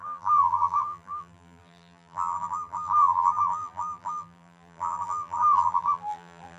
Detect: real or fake fake